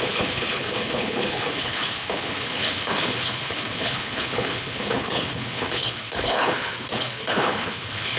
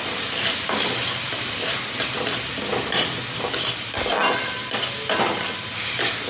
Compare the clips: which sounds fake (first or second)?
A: first